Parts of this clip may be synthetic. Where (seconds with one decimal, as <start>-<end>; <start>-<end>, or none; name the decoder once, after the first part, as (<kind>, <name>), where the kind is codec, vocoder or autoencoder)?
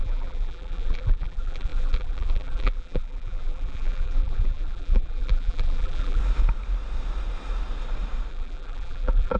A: 0.0-6.2 (vocoder, BigVGAN v2); 8.3-9.4